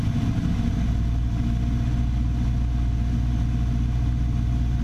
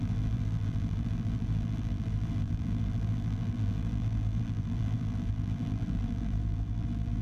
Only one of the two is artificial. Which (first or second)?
second